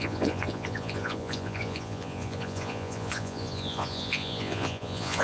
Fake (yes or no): yes